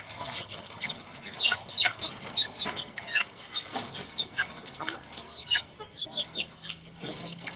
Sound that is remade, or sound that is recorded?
remade